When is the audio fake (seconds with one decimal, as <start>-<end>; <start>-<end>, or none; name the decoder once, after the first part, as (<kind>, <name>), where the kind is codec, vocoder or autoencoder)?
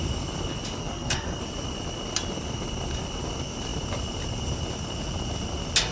0.8-1.4 (codec, SNAC)